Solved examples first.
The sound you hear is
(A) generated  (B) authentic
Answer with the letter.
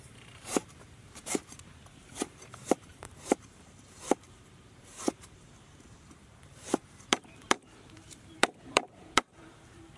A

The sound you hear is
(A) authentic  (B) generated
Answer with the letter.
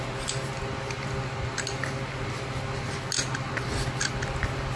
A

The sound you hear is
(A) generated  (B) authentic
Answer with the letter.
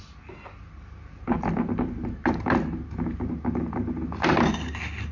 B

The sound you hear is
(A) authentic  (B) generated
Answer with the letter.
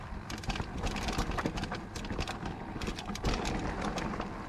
A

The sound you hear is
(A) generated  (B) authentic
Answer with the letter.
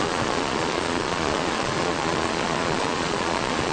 A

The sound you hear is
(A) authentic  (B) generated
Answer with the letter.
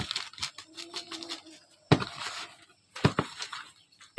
A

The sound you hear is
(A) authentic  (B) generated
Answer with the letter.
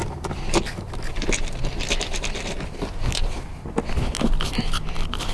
A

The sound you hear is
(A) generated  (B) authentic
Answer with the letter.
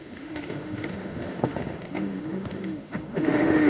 A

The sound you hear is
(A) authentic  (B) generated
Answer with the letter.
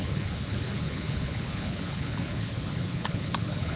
B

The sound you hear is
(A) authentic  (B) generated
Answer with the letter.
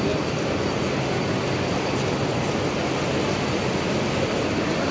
A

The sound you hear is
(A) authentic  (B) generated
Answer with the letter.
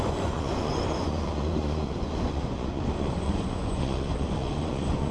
B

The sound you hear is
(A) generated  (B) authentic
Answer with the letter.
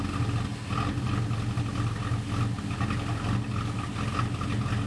B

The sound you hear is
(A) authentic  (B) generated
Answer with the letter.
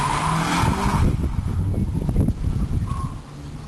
A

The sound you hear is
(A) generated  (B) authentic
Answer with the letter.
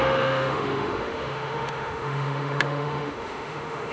A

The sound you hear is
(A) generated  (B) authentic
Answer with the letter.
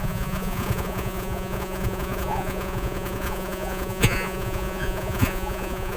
A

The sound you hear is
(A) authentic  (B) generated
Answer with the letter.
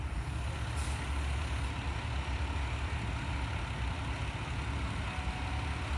A